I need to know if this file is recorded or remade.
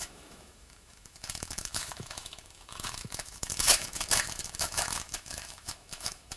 remade